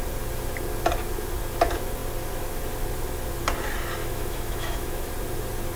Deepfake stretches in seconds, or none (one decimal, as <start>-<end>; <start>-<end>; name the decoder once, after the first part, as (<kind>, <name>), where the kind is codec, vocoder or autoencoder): 4.0-5.1 (autoencoder, DAC-VAE)